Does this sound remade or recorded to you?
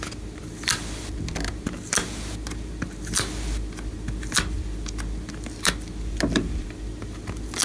recorded